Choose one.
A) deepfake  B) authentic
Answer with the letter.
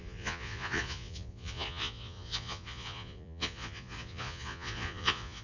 A